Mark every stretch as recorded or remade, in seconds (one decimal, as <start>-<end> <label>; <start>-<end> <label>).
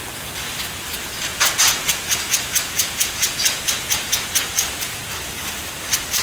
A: 0.0-1.3 recorded; 1.3-5.0 remade; 5.0-6.2 recorded